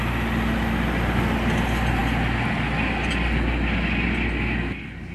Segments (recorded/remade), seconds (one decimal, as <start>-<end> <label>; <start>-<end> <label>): 0.0-5.1 recorded